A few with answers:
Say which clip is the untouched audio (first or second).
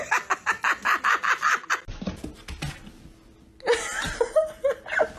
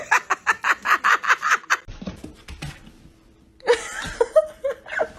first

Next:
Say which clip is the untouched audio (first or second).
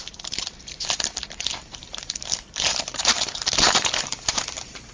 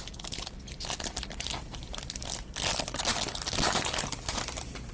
second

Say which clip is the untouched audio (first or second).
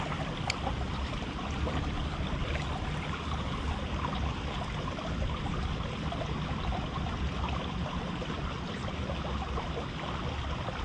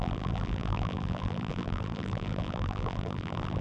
first